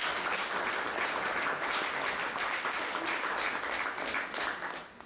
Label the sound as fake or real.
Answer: real